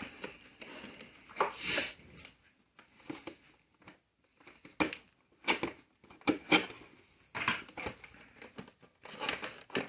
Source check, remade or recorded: recorded